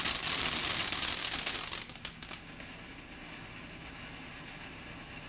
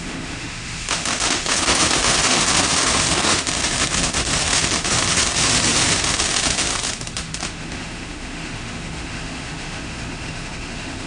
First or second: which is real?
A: first